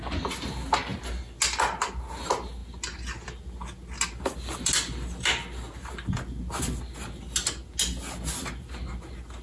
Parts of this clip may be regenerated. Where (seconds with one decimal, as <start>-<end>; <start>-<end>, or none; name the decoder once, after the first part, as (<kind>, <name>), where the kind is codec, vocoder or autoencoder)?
none